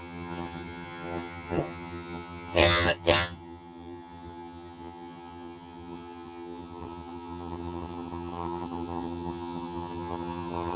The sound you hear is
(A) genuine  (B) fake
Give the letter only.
B